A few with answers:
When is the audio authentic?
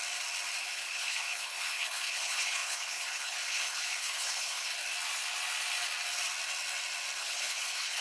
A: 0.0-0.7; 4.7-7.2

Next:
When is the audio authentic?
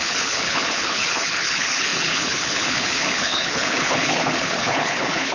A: none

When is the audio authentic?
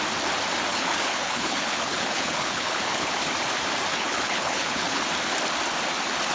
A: 0.0-0.7; 3.3-3.9; 5.0-6.3